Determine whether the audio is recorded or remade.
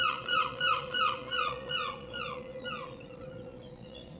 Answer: remade